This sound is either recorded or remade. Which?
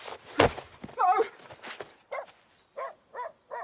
recorded